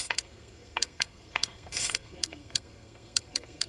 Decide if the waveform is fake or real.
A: fake